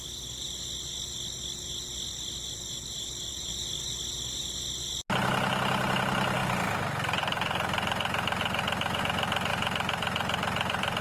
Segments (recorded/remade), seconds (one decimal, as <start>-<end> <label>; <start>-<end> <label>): 0.0-9.5 recorded; 9.5-11.0 remade